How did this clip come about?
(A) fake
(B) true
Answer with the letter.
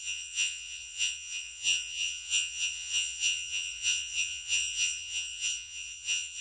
A